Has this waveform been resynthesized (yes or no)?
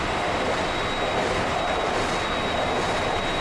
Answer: no